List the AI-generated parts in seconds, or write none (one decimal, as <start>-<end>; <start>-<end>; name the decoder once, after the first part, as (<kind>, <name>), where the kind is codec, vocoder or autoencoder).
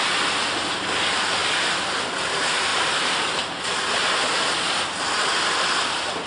none